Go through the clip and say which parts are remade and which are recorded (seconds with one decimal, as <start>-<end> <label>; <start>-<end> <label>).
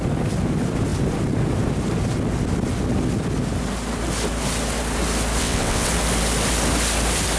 0.0-5.4 recorded; 5.4-5.9 remade; 5.9-7.4 recorded